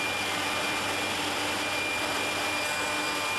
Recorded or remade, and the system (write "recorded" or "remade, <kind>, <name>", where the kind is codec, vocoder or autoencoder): recorded